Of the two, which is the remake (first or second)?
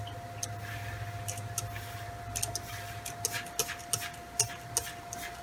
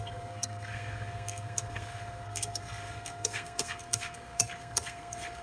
second